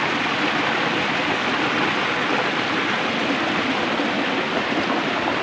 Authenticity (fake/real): real